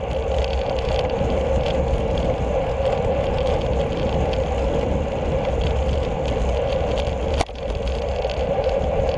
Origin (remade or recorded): recorded